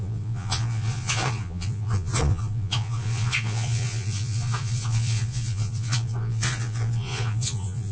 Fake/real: fake